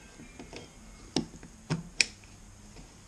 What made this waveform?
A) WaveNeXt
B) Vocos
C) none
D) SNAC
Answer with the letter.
C